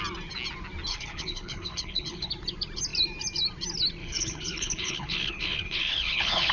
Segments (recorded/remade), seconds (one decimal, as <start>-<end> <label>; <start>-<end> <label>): 0.0-0.9 recorded; 0.9-2.3 remade; 2.3-4.0 recorded; 4.0-6.5 remade